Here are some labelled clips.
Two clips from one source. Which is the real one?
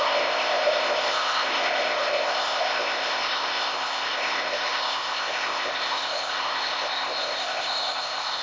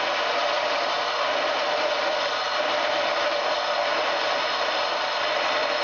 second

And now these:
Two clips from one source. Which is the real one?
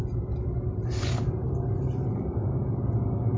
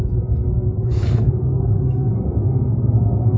first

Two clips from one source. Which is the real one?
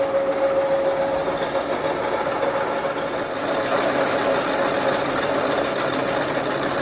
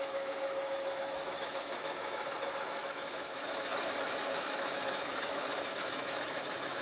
first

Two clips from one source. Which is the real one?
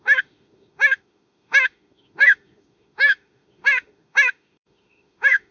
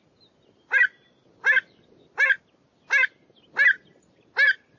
second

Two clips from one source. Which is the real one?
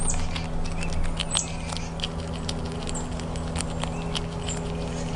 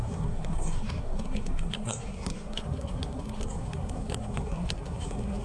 first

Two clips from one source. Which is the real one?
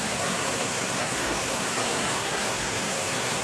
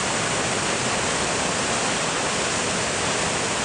second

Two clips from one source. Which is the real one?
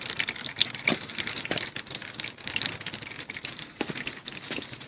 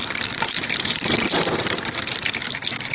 first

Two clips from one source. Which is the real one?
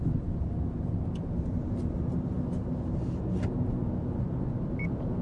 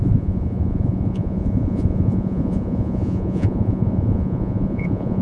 first